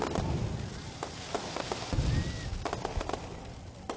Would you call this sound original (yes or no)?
yes